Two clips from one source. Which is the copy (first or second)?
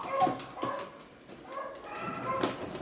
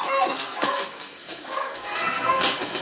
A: second